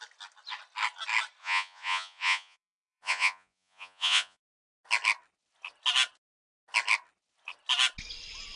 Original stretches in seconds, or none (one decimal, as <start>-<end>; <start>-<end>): 0.0-1.4; 4.4-8.6